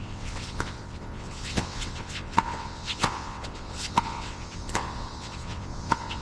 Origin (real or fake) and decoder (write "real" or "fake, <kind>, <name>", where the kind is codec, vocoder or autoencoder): fake, vocoder, WaveNeXt